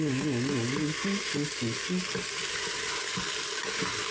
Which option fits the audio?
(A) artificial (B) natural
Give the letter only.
B